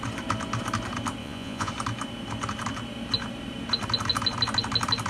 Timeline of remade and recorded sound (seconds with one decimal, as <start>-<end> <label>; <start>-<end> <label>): 0.0-1.2 recorded; 1.2-1.7 remade; 1.7-5.1 recorded